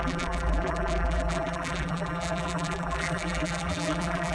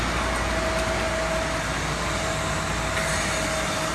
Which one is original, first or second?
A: second